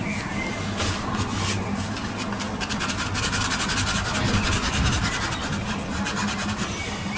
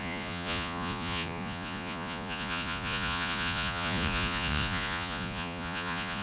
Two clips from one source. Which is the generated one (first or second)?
second